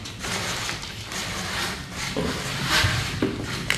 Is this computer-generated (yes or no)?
no